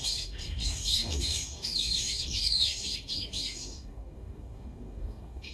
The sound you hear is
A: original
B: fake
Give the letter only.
B